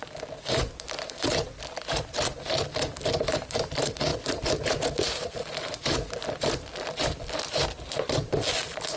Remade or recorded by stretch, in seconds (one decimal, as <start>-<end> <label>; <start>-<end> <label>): 0.0-9.0 recorded